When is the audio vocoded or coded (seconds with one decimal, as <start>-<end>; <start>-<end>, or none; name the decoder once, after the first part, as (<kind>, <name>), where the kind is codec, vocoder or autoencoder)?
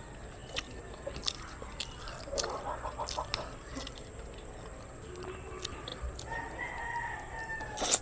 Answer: none